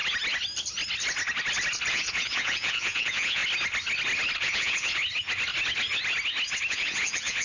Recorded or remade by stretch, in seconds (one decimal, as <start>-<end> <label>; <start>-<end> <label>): 0.0-1.9 recorded; 1.9-3.4 remade; 3.4-4.4 recorded; 4.4-5.0 remade; 5.0-6.7 recorded; 6.7-7.4 remade